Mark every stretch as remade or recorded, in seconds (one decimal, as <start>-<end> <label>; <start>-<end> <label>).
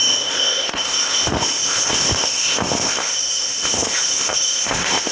0.0-5.1 remade